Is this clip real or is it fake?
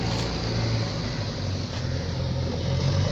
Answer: real